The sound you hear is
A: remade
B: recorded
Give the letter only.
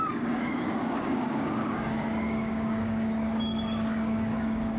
A